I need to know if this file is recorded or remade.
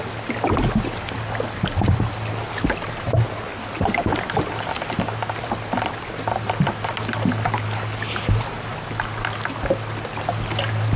recorded